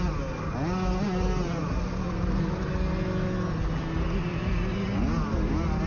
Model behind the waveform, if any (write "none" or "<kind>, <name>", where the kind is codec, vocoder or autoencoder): none